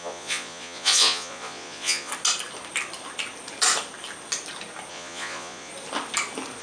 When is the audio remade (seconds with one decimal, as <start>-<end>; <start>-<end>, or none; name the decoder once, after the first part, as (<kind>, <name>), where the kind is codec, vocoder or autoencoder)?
0.0-2.1 (vocoder, Vocos); 4.9-5.7